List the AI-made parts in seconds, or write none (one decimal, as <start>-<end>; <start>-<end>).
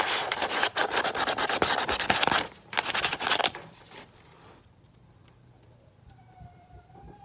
0.0-0.8; 5.1-7.2